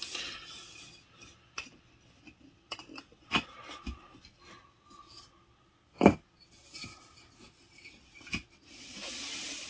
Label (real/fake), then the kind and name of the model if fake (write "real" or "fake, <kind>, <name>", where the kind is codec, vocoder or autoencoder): real